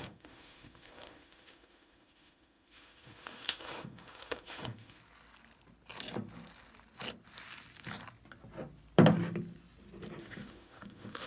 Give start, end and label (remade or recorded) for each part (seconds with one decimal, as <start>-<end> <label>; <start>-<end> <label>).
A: 0.0-5.0 remade; 5.0-10.2 recorded; 10.2-11.3 remade